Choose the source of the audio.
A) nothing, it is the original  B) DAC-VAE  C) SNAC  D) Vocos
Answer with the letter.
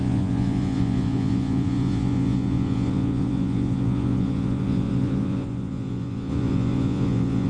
D